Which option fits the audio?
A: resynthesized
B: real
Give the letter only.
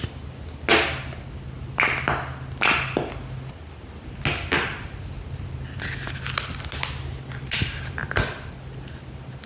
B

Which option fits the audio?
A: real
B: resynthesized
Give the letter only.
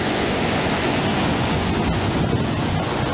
B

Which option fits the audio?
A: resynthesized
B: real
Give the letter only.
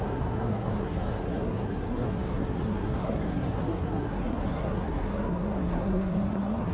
A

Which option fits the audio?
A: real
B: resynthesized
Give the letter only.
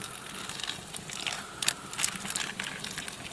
A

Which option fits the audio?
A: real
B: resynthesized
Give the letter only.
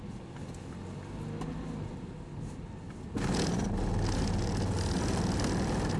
A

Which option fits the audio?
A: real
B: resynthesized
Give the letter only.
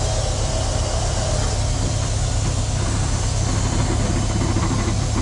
A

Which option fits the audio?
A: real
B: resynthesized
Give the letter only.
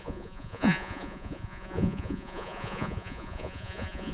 B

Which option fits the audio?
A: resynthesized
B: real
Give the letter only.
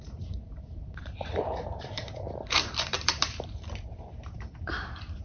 A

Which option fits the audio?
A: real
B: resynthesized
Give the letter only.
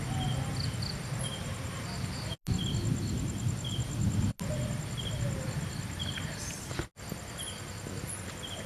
A